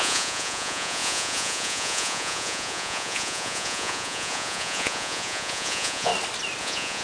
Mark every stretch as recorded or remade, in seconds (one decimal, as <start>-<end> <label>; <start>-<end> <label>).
0.0-6.1 remade; 6.1-6.6 recorded; 6.6-7.0 remade